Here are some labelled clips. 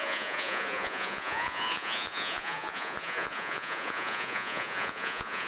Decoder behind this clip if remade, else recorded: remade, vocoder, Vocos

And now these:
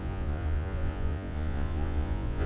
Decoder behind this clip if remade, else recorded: remade, vocoder, Vocos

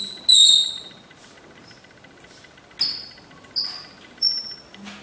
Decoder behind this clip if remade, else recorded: recorded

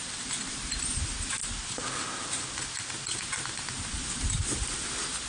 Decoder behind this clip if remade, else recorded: recorded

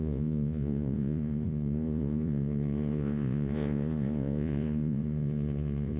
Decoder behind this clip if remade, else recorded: remade, vocoder, Vocos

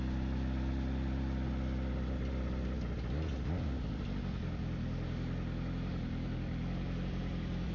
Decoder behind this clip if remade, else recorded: recorded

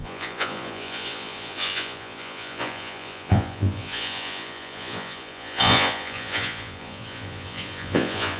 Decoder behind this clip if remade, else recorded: remade, vocoder, Vocos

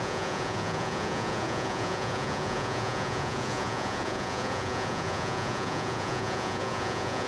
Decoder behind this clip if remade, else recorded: remade, vocoder, Vocos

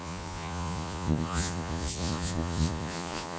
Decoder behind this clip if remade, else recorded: remade, vocoder, Vocos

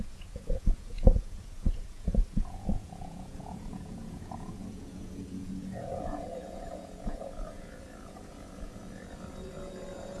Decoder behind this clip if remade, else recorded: remade, vocoder, Vocos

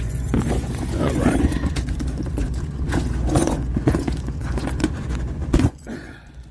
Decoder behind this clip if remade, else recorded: remade, vocoder, Vocos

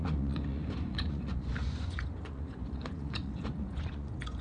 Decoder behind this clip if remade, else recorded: remade, vocoder, Vocos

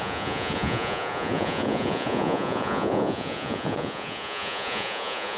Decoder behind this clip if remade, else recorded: remade, vocoder, Vocos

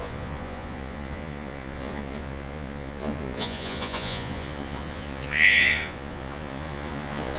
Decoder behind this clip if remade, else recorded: remade, vocoder, Vocos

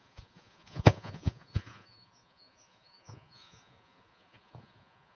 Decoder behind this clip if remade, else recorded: remade, vocoder, Vocos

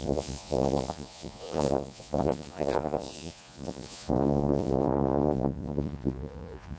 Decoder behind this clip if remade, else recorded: remade, vocoder, Vocos